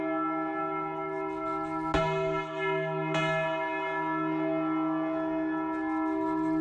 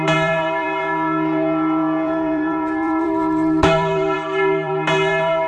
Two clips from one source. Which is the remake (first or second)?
second